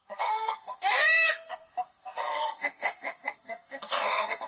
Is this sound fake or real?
fake